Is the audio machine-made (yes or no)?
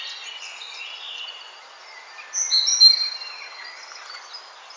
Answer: no